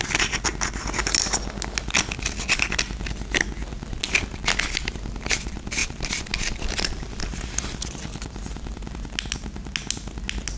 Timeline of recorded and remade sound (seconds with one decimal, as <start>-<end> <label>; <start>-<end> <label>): 0.0-10.6 recorded